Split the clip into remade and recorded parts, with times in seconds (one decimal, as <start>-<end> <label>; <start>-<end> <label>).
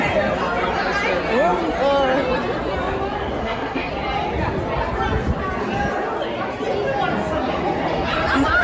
0.0-3.4 recorded; 3.4-3.9 remade; 3.9-8.6 recorded